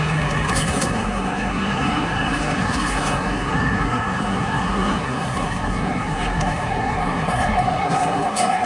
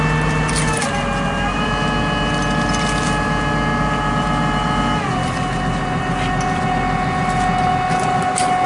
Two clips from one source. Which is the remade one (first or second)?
first